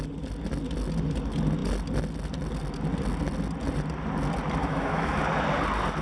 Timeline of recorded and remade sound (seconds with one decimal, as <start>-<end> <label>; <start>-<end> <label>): 0.0-4.6 recorded; 4.6-5.2 remade; 5.2-6.0 recorded